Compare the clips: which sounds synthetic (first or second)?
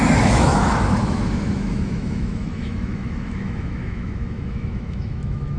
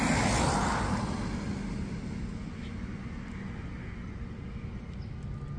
first